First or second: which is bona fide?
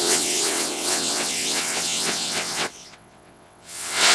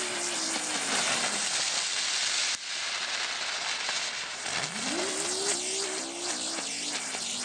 second